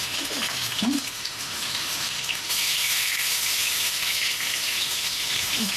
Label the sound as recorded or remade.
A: remade